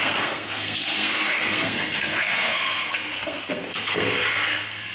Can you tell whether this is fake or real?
fake